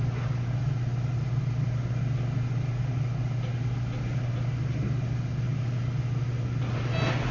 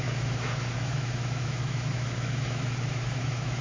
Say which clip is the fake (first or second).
second